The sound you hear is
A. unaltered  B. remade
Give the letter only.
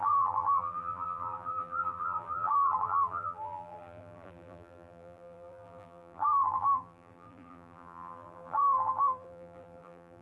B